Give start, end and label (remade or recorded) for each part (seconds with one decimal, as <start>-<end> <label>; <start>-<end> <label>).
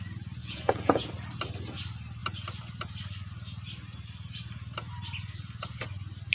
0.0-0.4 recorded; 0.4-1.1 remade; 1.1-6.3 recorded